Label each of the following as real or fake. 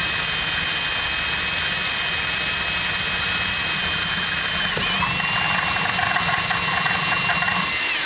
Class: real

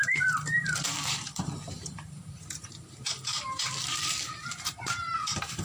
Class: fake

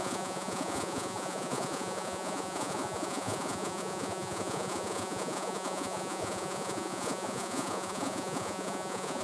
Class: fake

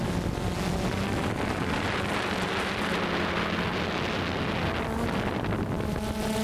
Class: real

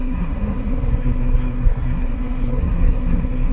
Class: fake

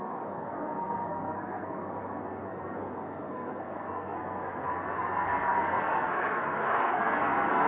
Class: fake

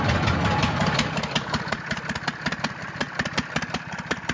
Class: real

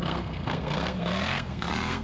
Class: fake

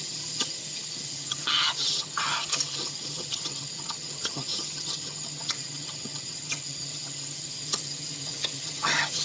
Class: fake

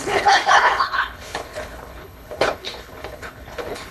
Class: fake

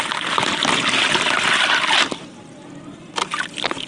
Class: real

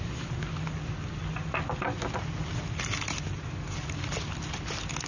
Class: real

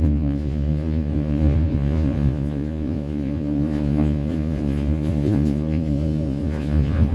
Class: fake